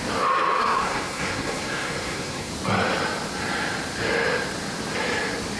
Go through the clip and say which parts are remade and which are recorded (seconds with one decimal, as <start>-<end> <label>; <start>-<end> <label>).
0.0-0.6 recorded; 0.6-2.5 remade; 2.5-5.6 recorded